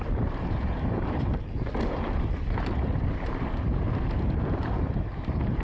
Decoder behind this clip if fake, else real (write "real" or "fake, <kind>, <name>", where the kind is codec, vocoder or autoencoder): fake, vocoder, BigVGAN v2